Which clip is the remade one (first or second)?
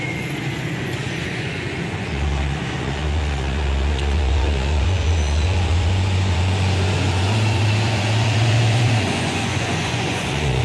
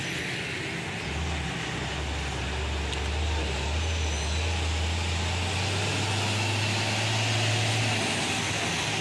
first